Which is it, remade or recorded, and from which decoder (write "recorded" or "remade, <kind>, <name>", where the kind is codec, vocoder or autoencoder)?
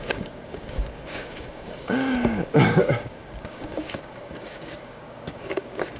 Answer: remade, codec, DAC